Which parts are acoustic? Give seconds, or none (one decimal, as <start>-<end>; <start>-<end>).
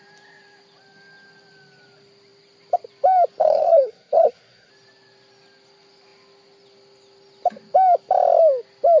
0.0-3.4; 4.7-9.0